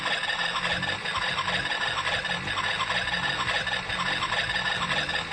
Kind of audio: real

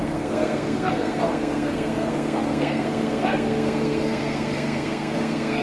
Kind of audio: fake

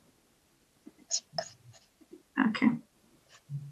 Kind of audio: real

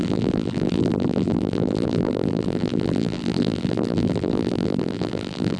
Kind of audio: fake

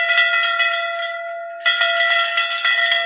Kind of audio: real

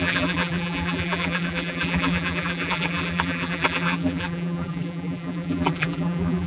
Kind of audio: fake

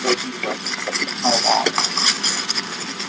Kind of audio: real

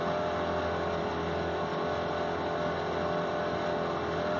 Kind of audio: real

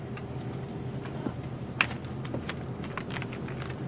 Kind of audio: real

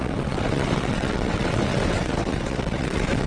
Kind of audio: fake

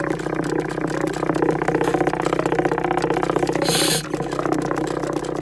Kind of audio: real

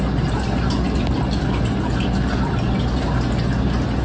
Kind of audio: real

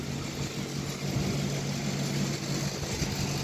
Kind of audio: real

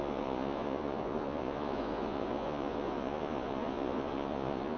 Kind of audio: fake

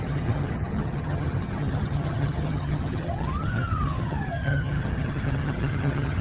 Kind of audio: fake